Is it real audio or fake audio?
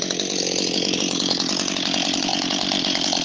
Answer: real